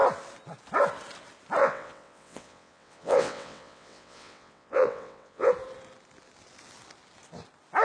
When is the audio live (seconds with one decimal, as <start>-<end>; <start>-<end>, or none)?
0.0-1.6; 5.5-7.8